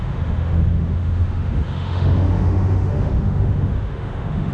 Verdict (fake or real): fake